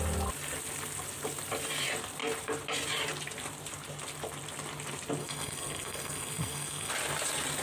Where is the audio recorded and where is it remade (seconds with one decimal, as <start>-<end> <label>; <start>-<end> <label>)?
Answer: 0.0-5.2 recorded; 5.2-6.9 remade; 6.9-7.6 recorded